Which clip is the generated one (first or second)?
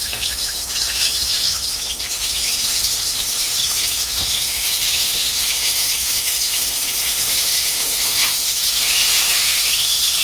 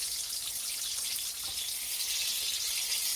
first